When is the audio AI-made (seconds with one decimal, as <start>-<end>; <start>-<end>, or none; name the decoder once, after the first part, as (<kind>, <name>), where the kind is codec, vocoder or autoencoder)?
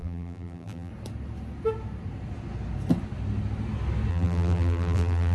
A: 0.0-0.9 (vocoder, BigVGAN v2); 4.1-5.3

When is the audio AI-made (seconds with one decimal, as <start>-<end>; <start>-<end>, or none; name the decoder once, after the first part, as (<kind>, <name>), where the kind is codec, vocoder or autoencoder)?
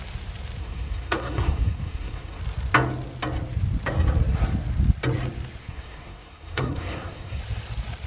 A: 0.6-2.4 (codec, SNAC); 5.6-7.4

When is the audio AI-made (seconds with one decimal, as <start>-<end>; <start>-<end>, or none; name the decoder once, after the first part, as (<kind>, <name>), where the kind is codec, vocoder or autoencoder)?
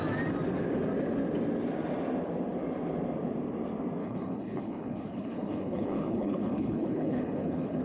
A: 4.0-7.8 (codec, HILCodec)